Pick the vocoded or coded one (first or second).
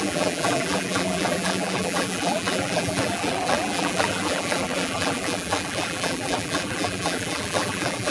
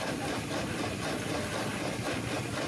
first